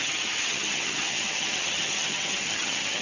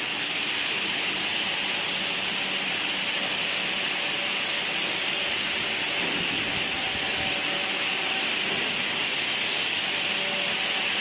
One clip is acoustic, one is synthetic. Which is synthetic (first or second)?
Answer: first